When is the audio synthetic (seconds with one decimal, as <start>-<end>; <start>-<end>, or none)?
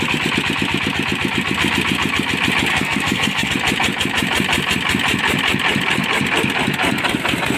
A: 2.7-3.5